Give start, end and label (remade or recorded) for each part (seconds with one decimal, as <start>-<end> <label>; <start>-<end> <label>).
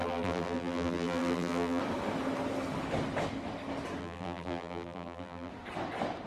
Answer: 0.0-1.8 remade; 1.8-4.0 recorded; 4.0-5.5 remade; 5.5-6.3 recorded